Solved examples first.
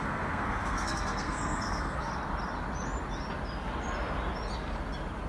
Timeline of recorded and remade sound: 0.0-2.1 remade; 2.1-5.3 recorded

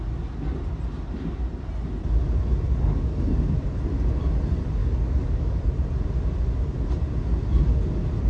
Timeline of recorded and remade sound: 0.0-4.8 recorded; 4.8-5.6 remade; 5.6-8.3 recorded

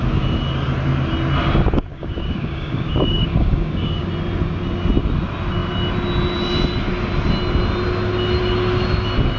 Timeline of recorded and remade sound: 0.0-1.9 recorded; 1.9-4.1 remade; 4.1-9.4 recorded

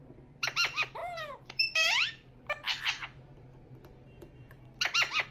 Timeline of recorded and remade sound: 0.0-5.3 remade

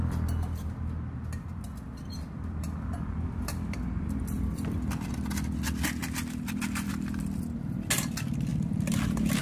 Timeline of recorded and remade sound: 0.0-1.9 recorded; 1.9-5.1 remade; 5.1-6.0 recorded; 6.0-6.9 remade; 6.9-8.5 recorded; 8.5-9.4 remade